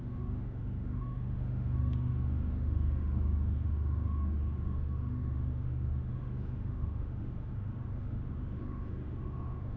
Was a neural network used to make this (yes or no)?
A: yes